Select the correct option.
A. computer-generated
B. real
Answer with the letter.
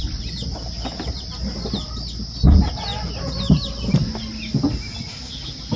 B